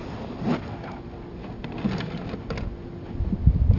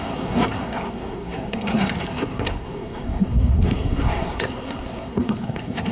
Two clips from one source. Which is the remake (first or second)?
second